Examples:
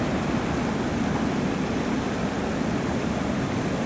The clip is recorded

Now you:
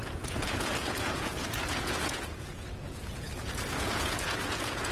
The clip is remade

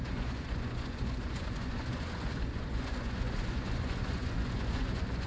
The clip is remade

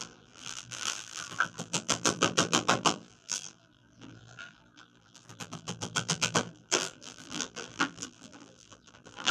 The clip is remade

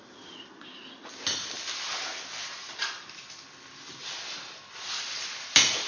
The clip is recorded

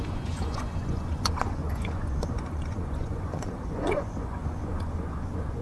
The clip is remade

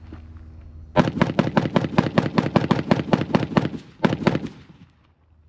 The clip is recorded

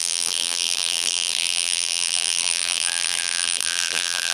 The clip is remade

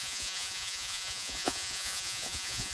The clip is remade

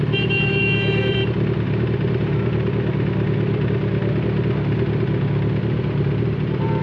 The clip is recorded